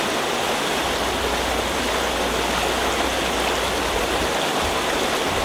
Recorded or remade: recorded